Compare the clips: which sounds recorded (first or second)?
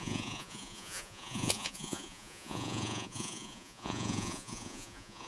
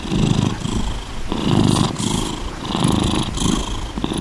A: second